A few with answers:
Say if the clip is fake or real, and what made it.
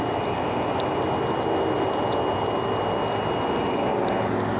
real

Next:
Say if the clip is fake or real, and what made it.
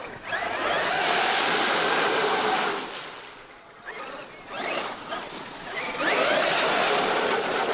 real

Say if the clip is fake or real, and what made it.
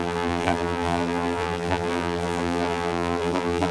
fake, vocoder, BigVGAN v2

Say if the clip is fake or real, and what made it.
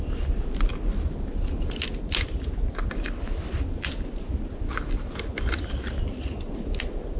real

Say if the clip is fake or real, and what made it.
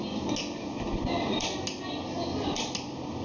real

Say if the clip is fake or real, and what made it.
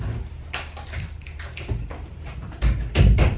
fake, vocoder, BigVGAN v2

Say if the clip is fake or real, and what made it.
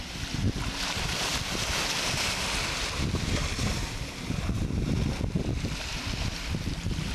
real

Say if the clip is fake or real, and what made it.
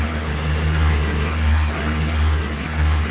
fake, codec, SNAC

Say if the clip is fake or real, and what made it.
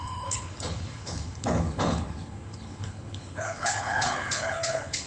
fake, codec, HILCodec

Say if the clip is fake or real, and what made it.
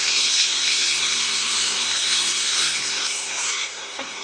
fake, codec, SNAC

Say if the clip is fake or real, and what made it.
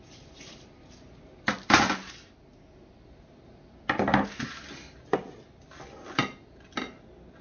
real